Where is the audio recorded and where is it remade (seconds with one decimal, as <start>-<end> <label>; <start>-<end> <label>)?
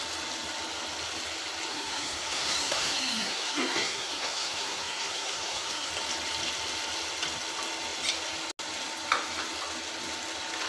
0.0-1.7 recorded; 1.7-5.9 remade; 5.9-10.7 recorded